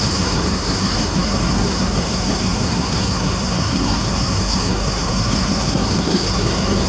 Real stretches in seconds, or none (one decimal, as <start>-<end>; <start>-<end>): none